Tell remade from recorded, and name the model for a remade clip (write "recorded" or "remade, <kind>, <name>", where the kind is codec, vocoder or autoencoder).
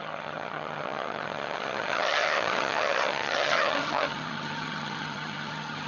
remade, vocoder, HiFi-GAN